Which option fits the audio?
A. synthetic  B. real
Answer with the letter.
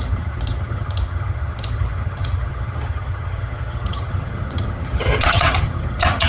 A